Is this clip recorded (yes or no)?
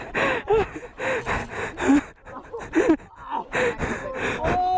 yes